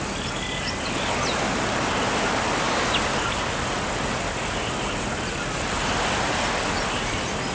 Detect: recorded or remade recorded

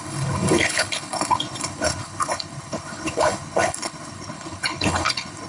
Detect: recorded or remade remade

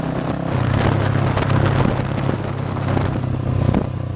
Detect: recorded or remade recorded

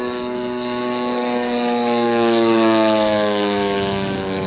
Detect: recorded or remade remade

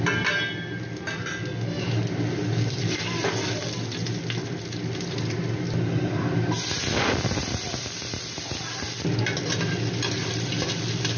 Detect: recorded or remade recorded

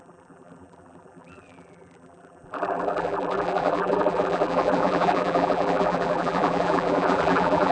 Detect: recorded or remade remade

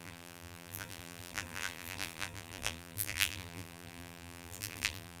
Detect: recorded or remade remade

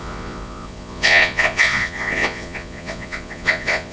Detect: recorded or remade remade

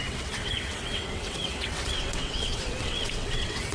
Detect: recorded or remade remade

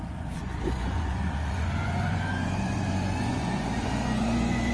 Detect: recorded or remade remade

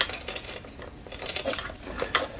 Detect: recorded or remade recorded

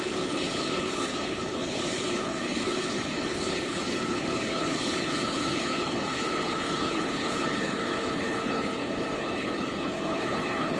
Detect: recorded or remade remade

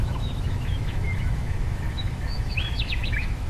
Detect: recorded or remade remade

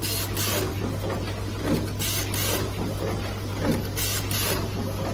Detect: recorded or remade recorded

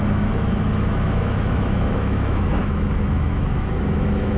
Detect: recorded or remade remade